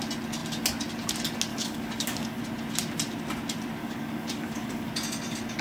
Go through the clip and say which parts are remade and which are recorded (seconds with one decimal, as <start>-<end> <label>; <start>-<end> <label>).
0.0-1.5 recorded; 1.5-2.4 remade; 2.4-3.8 recorded; 3.8-4.9 remade; 4.9-5.6 recorded